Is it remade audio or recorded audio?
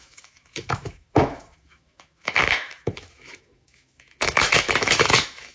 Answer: remade